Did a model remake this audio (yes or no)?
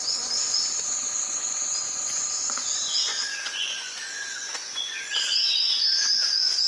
yes